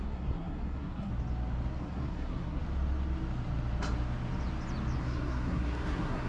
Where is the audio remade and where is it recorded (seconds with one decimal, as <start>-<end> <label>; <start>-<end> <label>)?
0.0-1.1 remade; 1.1-1.8 recorded; 1.8-2.6 remade; 2.6-5.0 recorded; 5.0-6.3 remade

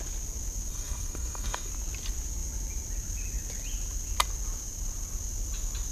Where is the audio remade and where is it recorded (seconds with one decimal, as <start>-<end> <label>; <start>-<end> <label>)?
0.0-0.7 recorded; 0.7-1.7 remade; 1.7-5.9 recorded

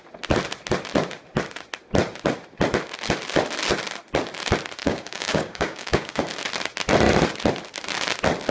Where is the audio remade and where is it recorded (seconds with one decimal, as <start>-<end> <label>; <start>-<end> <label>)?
0.0-4.8 recorded; 4.8-6.2 remade; 6.2-8.5 recorded

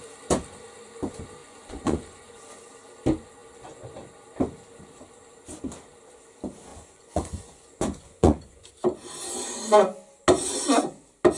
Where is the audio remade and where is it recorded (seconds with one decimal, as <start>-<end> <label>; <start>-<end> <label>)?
0.0-1.4 recorded; 1.4-2.4 remade; 2.4-6.7 recorded; 6.7-8.7 remade; 8.7-11.4 recorded

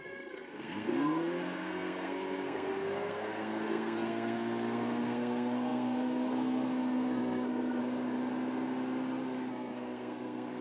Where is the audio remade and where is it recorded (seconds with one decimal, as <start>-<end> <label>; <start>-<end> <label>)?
0.0-7.8 remade; 7.8-9.5 recorded; 9.5-10.6 remade

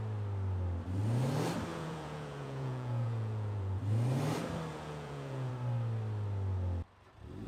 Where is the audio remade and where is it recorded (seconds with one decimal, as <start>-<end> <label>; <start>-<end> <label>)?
0.0-1.7 recorded; 1.7-3.8 remade; 3.8-4.7 recorded; 4.7-5.5 remade; 5.5-7.5 recorded

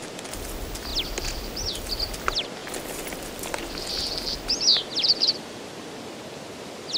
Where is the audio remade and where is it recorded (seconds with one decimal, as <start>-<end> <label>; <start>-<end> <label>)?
0.0-7.0 recorded

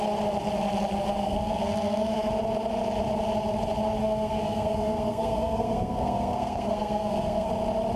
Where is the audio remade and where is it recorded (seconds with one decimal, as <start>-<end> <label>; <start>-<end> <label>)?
0.0-1.2 recorded; 1.2-2.3 remade; 2.3-4.0 recorded; 4.0-7.5 remade; 7.5-8.0 recorded